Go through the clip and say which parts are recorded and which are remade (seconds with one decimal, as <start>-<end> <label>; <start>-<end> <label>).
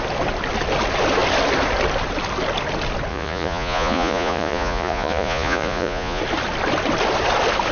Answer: 0.0-3.1 recorded; 3.1-6.2 remade; 6.2-7.7 recorded